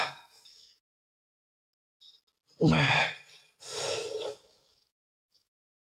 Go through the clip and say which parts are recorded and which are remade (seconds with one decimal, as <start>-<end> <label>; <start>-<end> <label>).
0.0-1.4 remade; 1.4-4.3 recorded; 4.3-5.8 remade